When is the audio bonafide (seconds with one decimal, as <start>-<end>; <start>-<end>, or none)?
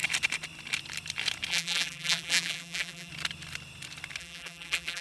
0.0-1.5; 3.1-4.2